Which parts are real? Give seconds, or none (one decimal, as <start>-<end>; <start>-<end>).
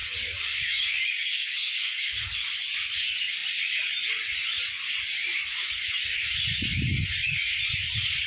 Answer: 2.3-5.6; 6.3-8.3